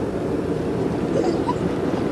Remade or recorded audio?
recorded